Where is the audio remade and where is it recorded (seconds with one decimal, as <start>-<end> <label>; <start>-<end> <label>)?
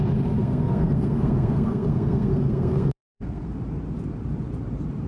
0.0-0.4 recorded; 0.4-3.5 remade; 3.5-5.1 recorded